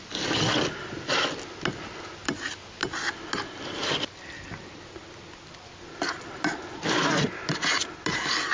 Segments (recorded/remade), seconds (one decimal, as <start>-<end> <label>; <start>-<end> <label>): 0.0-8.5 recorded